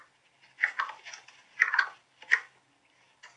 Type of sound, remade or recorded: recorded